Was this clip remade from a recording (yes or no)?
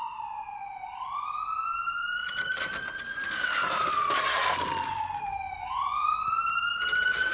no